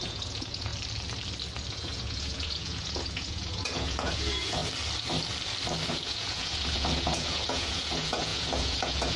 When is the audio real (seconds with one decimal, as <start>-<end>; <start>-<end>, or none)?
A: 0.7-1.7; 4.6-5.9